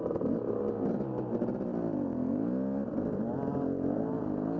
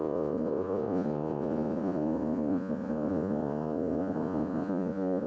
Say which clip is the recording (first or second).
first